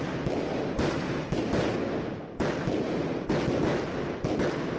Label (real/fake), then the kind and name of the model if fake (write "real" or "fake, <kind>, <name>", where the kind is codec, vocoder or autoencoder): real